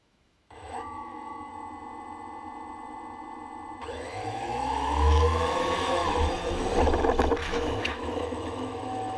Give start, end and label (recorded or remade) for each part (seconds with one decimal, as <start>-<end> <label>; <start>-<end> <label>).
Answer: 0.0-1.5 remade; 1.5-3.9 recorded; 3.9-6.0 remade; 6.0-7.4 recorded; 7.4-9.2 remade